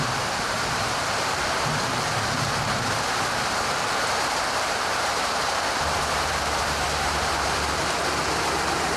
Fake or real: fake